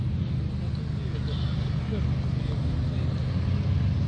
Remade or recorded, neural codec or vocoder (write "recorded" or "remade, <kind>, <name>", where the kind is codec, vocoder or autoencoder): recorded